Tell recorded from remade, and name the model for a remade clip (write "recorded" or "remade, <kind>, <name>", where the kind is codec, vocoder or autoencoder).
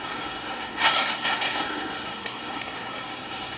remade, codec, SNAC